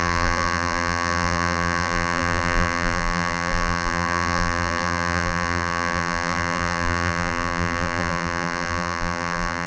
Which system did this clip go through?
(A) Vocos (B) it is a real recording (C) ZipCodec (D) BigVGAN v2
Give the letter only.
D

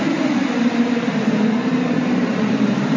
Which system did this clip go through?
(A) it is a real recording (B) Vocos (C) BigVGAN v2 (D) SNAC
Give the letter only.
C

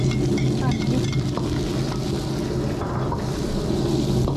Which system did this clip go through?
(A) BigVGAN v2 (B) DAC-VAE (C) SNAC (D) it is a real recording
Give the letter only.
D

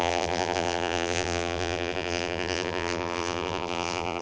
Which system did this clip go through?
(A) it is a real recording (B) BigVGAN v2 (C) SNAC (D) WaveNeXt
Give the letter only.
B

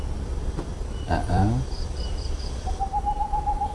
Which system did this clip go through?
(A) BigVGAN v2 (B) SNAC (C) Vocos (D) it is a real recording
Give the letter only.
A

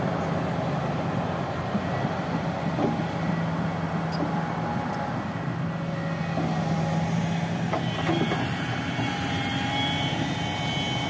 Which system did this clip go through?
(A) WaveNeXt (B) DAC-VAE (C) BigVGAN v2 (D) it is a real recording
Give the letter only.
D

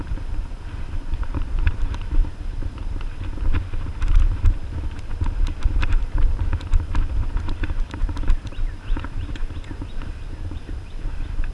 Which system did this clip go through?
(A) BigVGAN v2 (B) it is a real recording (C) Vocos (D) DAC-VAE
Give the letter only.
A